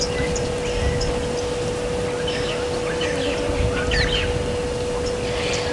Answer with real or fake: real